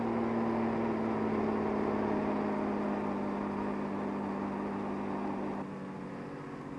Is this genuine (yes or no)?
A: yes